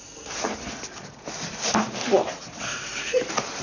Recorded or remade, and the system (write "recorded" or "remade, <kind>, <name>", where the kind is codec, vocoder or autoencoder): recorded